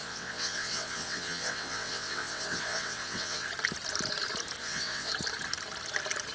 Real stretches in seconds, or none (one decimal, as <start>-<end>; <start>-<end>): 3.5-4.6; 5.1-6.3